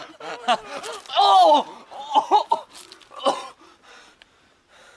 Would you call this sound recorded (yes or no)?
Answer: yes